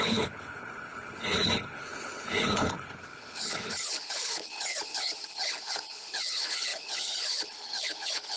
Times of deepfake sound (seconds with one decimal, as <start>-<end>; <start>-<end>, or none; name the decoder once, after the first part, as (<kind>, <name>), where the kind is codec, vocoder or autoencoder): 0.0-8.4 (codec, HILCodec)

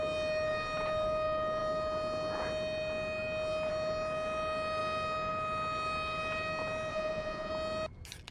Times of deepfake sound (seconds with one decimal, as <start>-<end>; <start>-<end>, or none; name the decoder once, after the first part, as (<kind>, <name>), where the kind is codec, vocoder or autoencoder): 6.9-7.5 (vocoder, Vocos)

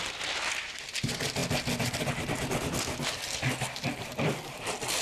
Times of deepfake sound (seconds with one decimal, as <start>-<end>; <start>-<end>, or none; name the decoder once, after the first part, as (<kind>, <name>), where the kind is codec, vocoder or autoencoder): none

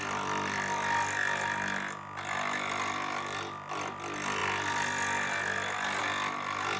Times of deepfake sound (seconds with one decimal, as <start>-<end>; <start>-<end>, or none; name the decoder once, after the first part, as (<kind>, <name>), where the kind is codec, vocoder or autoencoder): none

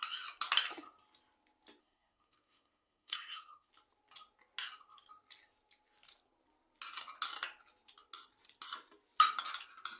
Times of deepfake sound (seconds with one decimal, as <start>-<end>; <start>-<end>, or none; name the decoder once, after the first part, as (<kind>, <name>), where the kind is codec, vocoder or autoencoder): 1.8-3.7 (codec, SNAC)

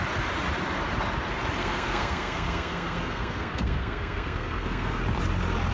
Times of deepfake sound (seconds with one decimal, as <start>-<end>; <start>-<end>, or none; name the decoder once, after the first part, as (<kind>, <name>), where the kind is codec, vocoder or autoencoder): 1.6-5.0 (codec, SNAC)